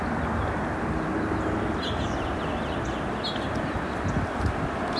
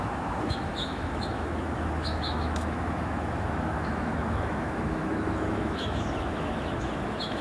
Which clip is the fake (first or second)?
second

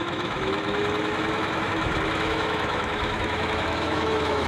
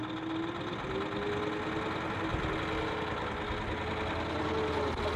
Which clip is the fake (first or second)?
first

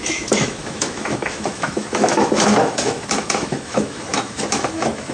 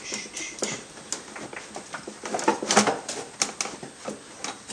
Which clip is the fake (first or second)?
first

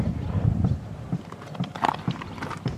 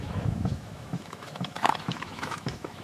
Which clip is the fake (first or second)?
second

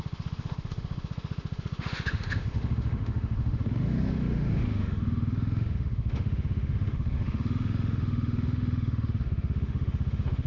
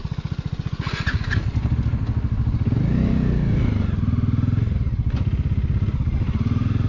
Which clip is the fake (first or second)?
first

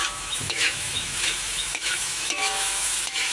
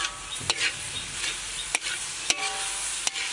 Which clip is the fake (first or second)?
first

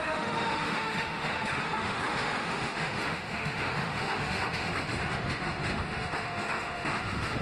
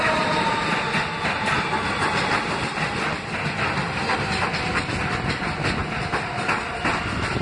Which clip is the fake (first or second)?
first